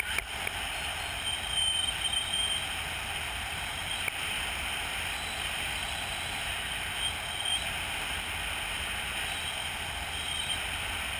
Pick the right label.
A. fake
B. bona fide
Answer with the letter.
B